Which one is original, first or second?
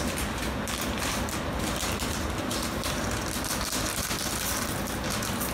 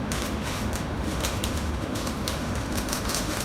first